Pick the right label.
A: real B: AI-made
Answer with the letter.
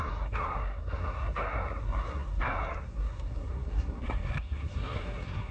B